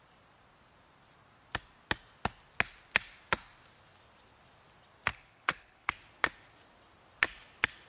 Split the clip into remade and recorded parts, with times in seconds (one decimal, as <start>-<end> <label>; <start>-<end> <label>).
0.0-5.1 recorded; 5.1-5.9 remade; 5.9-7.9 recorded